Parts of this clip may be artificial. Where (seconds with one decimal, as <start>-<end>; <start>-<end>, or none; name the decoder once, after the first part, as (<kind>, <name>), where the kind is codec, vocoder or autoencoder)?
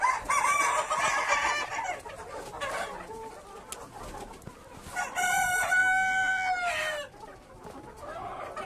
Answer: 5.8-6.5 (vocoder, BigVGAN v2)